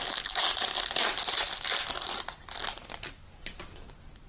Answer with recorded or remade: recorded